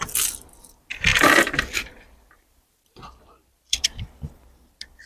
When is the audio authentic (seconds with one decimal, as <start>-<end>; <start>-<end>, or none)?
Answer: 0.0-1.1; 4.0-5.1